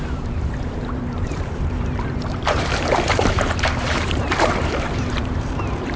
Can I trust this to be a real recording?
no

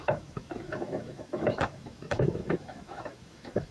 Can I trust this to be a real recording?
no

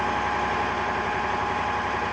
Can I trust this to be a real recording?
yes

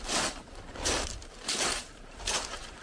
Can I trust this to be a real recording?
no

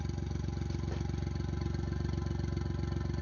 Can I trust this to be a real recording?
yes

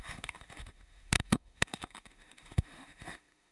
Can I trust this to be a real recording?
no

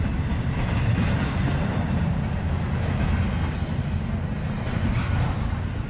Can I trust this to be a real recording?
yes